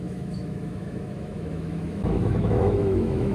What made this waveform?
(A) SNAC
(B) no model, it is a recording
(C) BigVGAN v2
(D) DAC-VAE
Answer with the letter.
D